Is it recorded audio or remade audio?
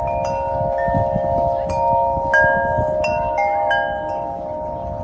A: recorded